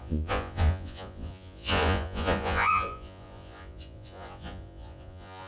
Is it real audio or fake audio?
fake